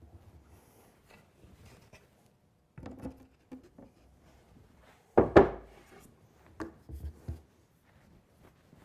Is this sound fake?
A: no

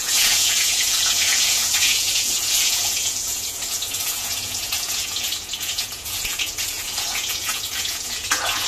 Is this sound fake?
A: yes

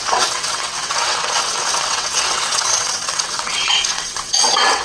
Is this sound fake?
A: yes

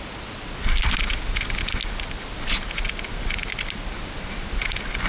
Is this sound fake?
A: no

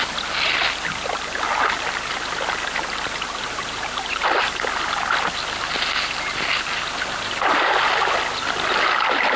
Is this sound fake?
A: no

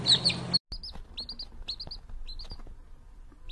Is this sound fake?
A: no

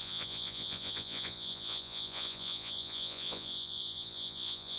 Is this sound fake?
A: yes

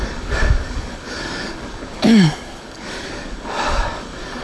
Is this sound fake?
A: yes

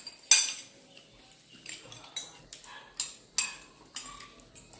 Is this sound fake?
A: no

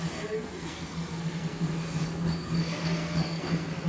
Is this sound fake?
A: yes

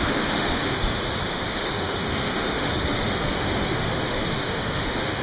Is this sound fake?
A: yes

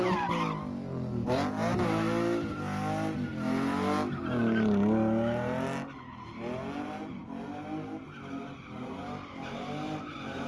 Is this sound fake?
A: no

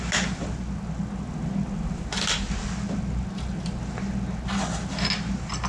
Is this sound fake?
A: no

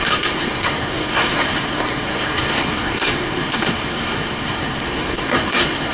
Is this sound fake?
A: yes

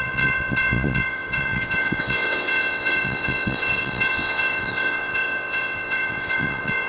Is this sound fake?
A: yes